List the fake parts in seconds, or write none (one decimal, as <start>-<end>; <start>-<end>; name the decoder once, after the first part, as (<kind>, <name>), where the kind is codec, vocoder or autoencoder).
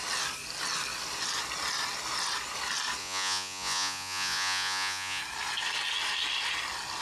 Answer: 3.0-5.2 (vocoder, Vocos)